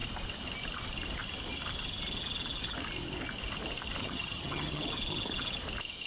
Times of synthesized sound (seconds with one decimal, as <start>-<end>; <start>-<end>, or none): 4.0-4.8